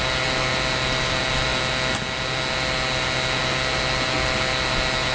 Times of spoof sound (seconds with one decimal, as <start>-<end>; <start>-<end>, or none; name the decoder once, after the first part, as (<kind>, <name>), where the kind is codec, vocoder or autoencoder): none